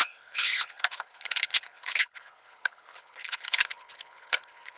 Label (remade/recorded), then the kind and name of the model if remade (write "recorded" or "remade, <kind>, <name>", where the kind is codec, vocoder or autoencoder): remade, codec, HILCodec